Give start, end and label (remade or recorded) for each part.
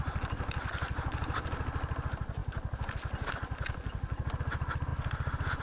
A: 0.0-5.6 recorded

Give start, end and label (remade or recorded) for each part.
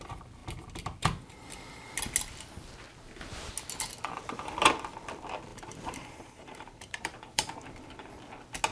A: 0.0-4.2 recorded; 4.2-4.7 remade; 4.7-5.5 recorded; 5.5-8.1 remade; 8.1-8.7 recorded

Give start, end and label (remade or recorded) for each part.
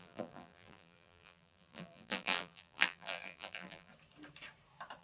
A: 0.0-3.9 remade; 3.9-5.0 recorded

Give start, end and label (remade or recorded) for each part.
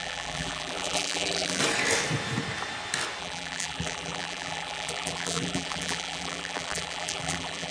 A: 0.0-1.6 remade; 1.6-3.2 recorded; 3.2-7.7 remade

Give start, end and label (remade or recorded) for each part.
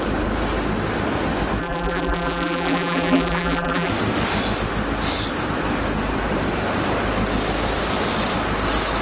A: 0.0-1.6 recorded; 1.6-3.9 remade; 3.9-9.0 recorded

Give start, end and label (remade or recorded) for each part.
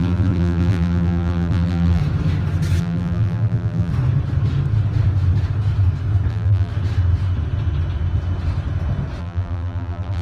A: 0.0-2.0 remade; 2.0-2.8 recorded; 2.8-3.9 remade; 3.9-6.3 recorded; 6.3-6.7 remade; 6.7-9.2 recorded; 9.2-10.2 remade